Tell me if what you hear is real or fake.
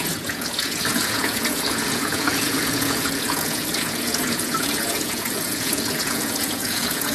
fake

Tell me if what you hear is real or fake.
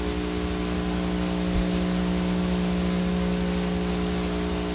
real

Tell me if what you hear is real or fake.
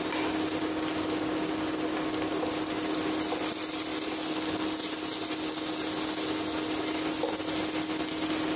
real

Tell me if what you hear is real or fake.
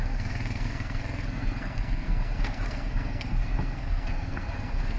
fake